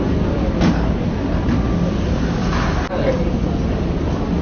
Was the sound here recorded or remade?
recorded